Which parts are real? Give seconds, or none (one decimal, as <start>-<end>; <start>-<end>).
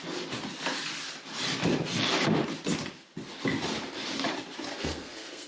0.0-4.7